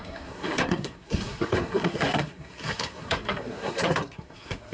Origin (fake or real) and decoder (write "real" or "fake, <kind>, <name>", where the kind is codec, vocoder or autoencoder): fake, codec, SNAC